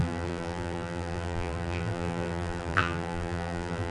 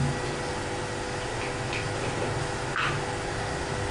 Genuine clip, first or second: second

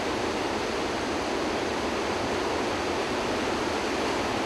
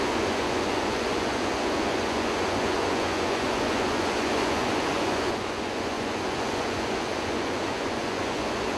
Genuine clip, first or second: first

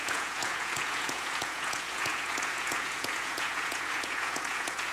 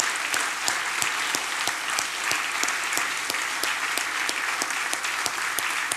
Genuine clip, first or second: second